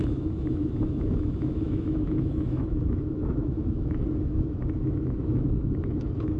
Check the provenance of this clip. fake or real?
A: fake